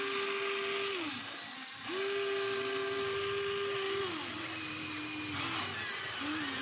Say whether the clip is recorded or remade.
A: recorded